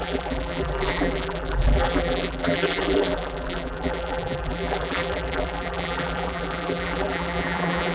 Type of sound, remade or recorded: remade